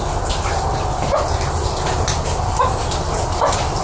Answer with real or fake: real